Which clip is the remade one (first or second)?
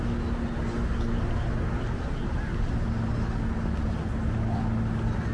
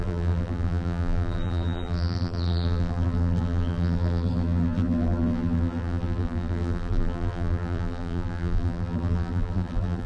second